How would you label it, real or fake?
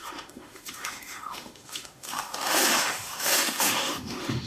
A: fake